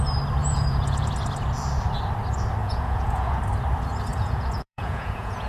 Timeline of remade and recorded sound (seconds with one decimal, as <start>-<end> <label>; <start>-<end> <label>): 0.0-0.4 recorded; 0.4-1.1 remade; 1.1-2.6 recorded; 2.6-3.4 remade; 3.4-4.1 recorded; 4.1-5.5 remade